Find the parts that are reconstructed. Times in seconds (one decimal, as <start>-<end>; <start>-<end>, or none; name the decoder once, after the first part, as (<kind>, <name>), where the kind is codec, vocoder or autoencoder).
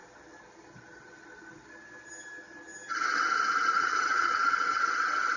3.7-4.9 (vocoder, HiFi-GAN)